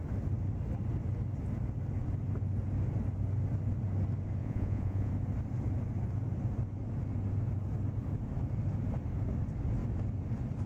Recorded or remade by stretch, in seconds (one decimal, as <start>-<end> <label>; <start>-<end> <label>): 0.0-4.4 recorded; 4.4-5.1 remade; 5.1-10.7 recorded